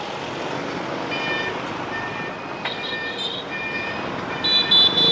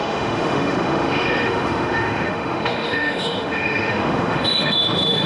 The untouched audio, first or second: first